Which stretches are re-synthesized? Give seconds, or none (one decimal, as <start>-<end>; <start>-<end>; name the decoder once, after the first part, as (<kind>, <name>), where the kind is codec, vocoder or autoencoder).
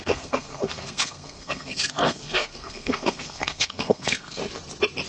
0.0-4.4 (codec, SNAC)